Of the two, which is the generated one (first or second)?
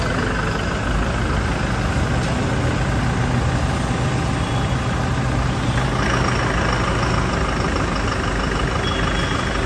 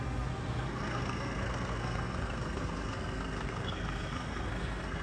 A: second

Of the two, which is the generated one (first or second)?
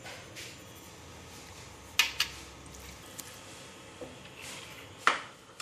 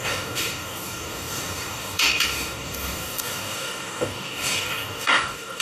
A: second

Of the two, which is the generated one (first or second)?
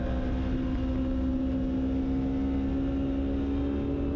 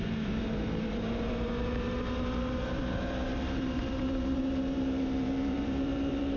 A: second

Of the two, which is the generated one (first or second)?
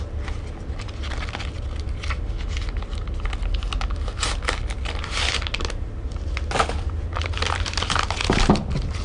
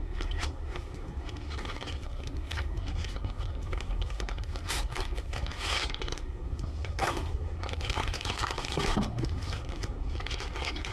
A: second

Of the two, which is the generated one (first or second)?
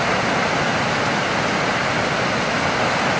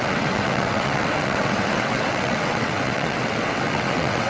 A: second